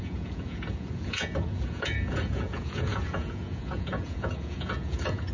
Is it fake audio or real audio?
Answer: fake